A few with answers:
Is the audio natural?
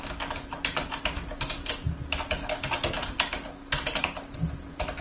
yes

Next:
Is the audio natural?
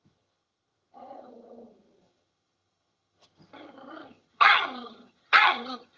no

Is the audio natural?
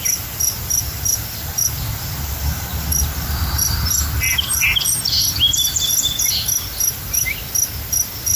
yes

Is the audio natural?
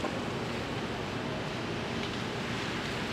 yes